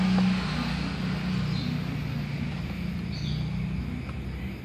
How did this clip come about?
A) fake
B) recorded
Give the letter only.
B